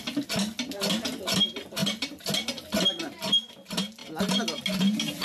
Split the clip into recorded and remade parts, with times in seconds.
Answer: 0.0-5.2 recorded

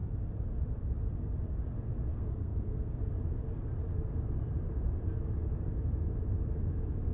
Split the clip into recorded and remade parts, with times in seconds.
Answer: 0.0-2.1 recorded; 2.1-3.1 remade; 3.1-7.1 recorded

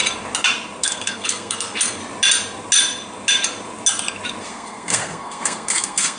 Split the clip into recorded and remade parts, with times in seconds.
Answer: 0.0-0.8 recorded; 0.8-2.0 remade; 2.0-4.4 recorded; 4.4-6.2 remade

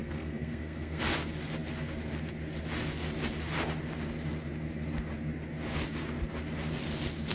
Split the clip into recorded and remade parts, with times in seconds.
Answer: 0.0-1.0 remade; 1.0-7.3 recorded

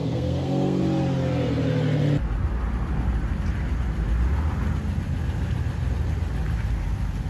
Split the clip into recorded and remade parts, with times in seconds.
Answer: 0.0-0.8 remade; 0.8-7.3 recorded

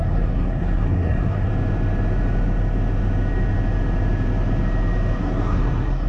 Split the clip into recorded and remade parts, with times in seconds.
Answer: 0.0-1.5 remade; 1.5-5.2 recorded; 5.2-6.1 remade

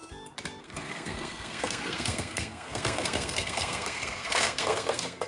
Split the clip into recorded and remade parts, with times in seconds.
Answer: 0.0-0.6 recorded; 0.6-5.3 remade